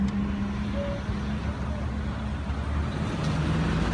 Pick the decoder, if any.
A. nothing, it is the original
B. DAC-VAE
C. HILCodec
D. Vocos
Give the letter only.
A